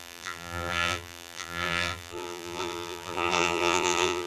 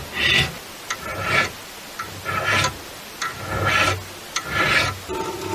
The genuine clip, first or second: second